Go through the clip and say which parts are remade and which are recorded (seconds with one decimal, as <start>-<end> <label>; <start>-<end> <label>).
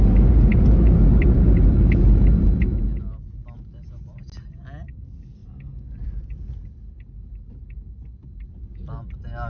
0.0-9.5 recorded